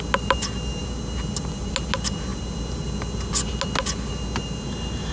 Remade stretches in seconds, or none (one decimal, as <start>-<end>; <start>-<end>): none